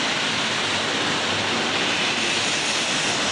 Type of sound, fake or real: real